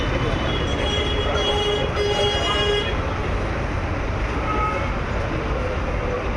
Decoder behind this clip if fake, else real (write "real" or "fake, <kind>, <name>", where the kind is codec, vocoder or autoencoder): real